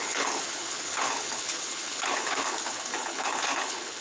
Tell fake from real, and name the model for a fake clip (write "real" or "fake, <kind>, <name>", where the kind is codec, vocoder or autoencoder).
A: fake, codec, HILCodec